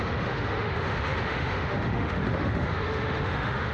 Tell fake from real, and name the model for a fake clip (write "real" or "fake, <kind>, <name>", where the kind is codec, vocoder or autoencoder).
fake, autoencoder, DAC-VAE